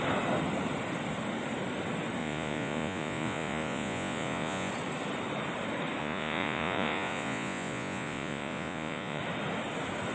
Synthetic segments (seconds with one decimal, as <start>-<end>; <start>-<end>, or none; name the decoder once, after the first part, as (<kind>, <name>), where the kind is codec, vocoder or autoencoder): 2.2-4.7 (vocoder, Vocos); 6.0-9.2